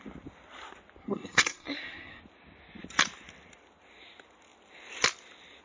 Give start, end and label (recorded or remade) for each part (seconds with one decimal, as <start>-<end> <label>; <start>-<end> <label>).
0.0-1.0 recorded; 1.0-2.2 remade; 2.2-5.6 recorded